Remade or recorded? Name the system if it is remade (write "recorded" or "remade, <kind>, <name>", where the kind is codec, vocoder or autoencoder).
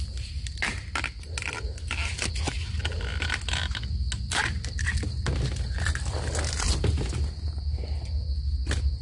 recorded